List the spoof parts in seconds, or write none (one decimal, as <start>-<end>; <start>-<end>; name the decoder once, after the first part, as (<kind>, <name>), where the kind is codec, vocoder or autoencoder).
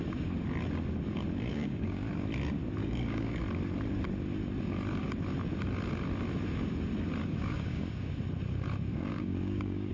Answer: 1.5-2.1 (codec, DAC); 2.8-3.4; 7.2-8.1; 8.9-9.9